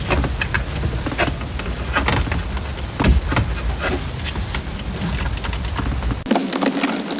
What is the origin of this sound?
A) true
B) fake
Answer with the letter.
A